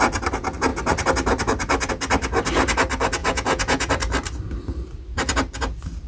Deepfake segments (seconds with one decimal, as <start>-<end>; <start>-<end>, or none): 3.2-3.9